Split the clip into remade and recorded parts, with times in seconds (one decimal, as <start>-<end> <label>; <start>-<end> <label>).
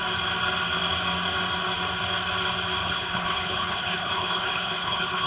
0.0-2.8 recorded; 2.8-5.3 remade